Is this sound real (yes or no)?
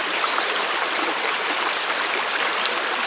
no